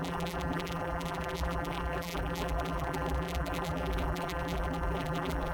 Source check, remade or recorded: remade